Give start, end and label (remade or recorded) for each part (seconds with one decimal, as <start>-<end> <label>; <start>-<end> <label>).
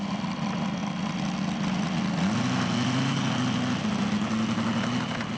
0.0-5.4 recorded